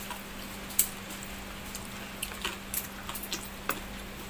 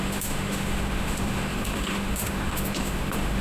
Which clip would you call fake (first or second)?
second